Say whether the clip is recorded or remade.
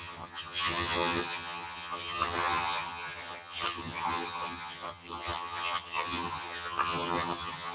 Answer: remade